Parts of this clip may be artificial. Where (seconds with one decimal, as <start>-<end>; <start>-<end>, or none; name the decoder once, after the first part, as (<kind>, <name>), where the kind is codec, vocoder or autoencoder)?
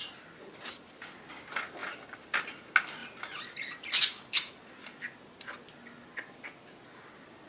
0.0-1.0 (vocoder, BigVGAN v2); 1.8-2.6